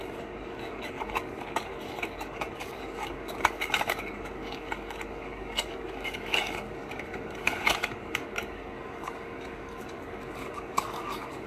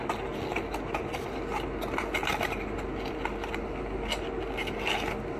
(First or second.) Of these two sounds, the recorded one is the second